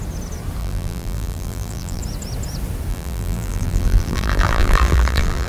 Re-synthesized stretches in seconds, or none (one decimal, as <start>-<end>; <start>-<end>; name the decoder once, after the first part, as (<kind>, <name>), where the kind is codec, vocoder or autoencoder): 0.6-2.0 (vocoder, BigVGAN v2); 2.9-5.5